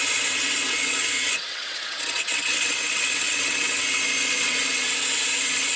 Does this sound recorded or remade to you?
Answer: remade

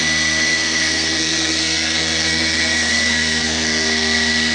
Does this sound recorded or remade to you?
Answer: remade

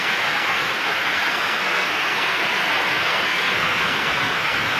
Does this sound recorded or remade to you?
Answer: remade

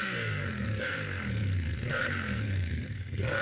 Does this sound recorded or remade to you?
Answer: remade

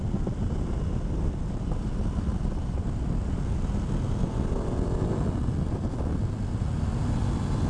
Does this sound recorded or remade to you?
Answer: recorded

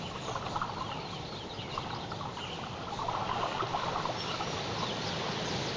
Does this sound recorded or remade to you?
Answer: recorded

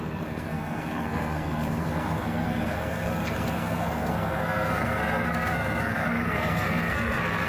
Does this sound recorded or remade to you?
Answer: remade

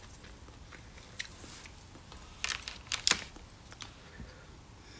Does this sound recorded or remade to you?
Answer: recorded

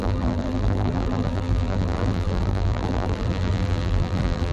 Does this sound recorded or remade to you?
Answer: remade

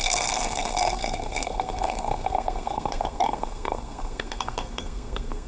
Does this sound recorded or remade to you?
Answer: remade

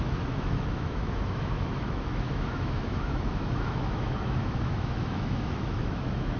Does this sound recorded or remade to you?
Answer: remade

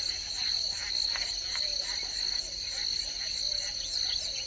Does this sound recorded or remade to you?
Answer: recorded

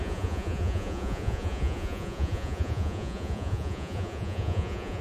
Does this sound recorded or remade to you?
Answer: remade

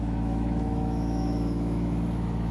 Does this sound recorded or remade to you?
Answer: remade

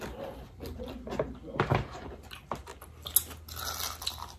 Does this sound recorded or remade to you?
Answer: recorded